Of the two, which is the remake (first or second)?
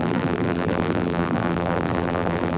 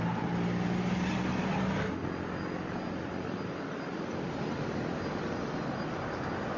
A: first